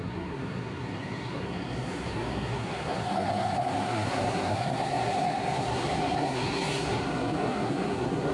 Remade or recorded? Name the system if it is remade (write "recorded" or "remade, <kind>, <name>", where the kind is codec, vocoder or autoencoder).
remade, codec, SNAC